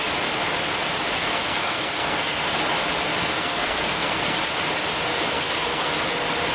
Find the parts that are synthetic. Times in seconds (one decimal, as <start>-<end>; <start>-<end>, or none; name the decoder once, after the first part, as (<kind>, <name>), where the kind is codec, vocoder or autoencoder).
1.2-2.6 (codec, SNAC); 3.2-4.4; 5.1-5.9